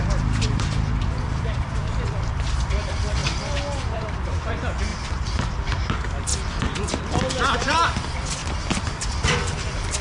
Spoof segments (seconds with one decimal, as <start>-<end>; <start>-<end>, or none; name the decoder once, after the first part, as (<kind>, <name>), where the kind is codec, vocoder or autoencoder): 0.0-3.2 (vocoder, BigVGAN v2); 3.8-4.9; 5.5-6.3; 7.0-8.4; 9.1-10.0